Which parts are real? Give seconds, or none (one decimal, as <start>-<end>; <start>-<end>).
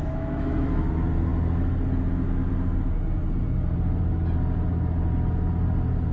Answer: 0.9-6.1